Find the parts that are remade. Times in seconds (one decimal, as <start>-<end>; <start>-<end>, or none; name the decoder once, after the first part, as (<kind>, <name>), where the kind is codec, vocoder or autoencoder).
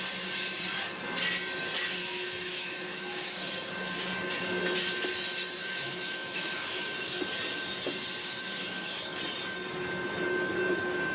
2.0-3.5 (autoencoder, DAC-VAE); 5.6-7.2; 8.2-9.2